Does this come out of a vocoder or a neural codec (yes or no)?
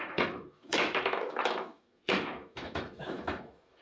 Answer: yes